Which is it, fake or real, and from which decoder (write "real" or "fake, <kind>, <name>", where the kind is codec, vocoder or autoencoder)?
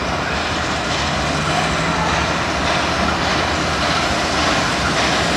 real